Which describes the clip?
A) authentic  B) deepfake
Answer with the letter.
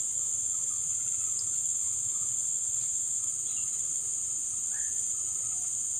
A